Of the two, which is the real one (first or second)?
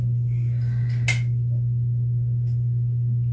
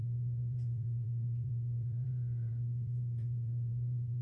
first